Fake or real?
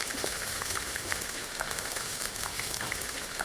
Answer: fake